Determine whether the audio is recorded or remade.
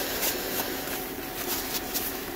remade